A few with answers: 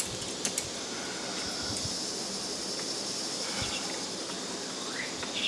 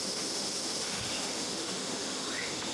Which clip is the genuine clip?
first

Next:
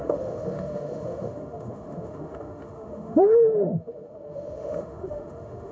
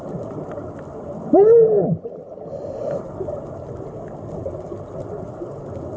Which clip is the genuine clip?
second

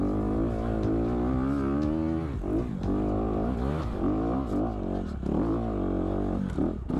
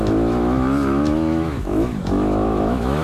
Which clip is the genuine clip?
first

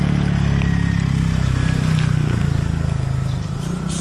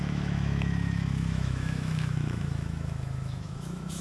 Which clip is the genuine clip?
first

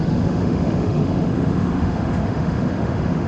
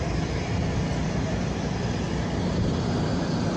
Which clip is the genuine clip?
second